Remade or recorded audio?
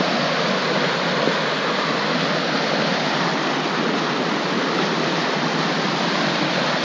recorded